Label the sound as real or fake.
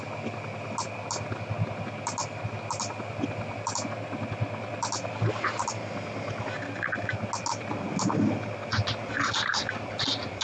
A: real